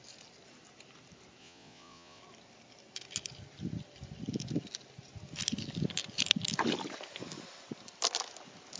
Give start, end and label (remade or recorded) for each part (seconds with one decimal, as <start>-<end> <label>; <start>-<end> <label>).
0.0-1.4 recorded; 1.4-2.2 remade; 2.2-8.8 recorded